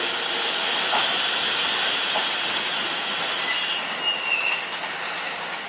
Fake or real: real